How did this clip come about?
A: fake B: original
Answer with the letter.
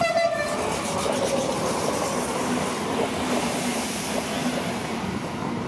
B